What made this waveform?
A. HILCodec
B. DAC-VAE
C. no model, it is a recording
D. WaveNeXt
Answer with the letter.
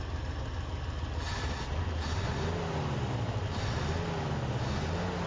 C